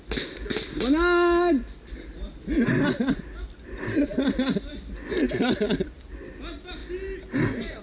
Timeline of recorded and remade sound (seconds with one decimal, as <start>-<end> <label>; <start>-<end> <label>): 0.0-7.8 recorded